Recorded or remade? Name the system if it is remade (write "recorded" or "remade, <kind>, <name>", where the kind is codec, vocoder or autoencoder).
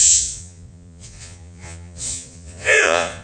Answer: remade, vocoder, Vocos